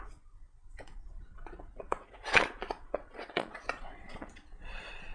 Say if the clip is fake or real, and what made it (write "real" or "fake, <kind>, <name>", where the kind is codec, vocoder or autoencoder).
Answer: fake, vocoder, Vocos